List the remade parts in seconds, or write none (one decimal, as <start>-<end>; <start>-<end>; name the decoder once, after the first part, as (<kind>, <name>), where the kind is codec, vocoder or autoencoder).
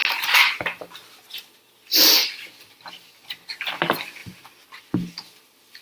2.2-2.9 (vocoder, BigVGAN v2); 4.2-5.8